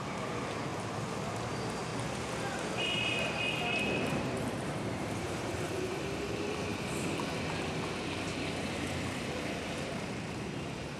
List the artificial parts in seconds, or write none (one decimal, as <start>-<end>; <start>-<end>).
0.0-0.7; 1.3-1.9; 3.8-6.7; 8.7-11.0